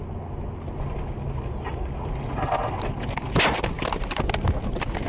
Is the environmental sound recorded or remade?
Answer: recorded